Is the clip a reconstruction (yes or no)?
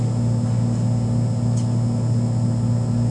no